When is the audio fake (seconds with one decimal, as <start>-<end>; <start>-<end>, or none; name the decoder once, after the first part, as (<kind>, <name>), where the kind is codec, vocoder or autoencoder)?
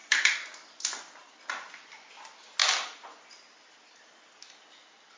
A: none